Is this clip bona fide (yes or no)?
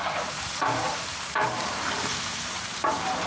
no